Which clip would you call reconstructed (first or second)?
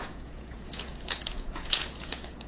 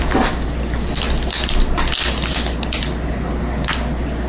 first